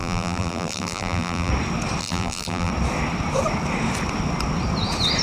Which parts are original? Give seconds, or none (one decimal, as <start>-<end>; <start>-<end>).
1.5-2.0; 2.7-5.2